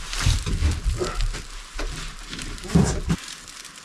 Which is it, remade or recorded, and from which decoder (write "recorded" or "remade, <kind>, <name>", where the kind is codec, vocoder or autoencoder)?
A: recorded